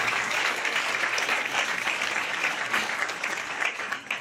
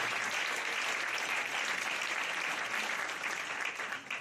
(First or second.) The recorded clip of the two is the second